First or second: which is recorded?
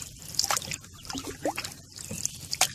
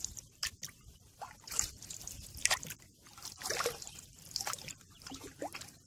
first